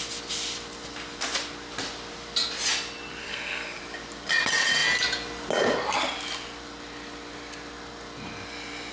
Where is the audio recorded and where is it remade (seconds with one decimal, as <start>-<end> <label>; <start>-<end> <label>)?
0.0-3.2 recorded; 3.2-3.8 remade; 3.8-8.9 recorded